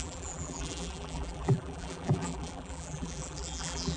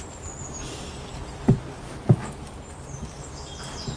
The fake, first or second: first